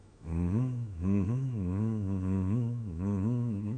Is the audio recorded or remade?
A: remade